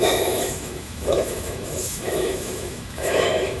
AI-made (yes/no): yes